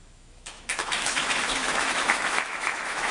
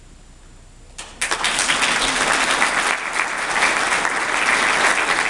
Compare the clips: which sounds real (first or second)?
second